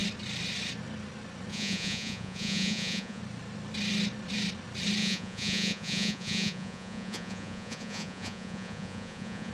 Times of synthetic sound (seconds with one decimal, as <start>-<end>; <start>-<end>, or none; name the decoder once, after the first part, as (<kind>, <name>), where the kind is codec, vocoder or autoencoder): 1.5-3.2 (vocoder, Vocos); 5.0-9.5